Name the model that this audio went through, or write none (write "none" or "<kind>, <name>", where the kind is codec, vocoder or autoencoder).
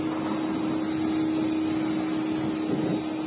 none